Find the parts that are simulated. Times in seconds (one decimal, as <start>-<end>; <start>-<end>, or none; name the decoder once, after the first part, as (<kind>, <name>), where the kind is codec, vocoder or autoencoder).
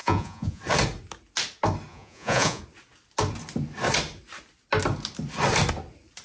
0.0-0.6 (vocoder, Vocos); 1.9-2.6